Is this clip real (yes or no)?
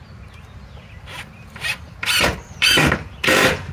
no